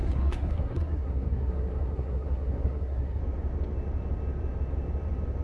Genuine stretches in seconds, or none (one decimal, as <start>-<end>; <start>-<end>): 3.2-5.4